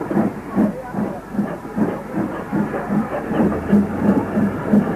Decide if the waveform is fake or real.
fake